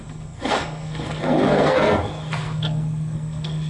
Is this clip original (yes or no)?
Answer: no